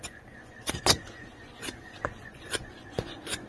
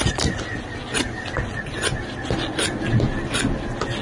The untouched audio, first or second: second